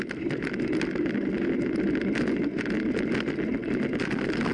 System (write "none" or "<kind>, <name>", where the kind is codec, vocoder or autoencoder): none